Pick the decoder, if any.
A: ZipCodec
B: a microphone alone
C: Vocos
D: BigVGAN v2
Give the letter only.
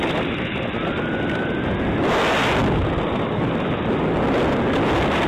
B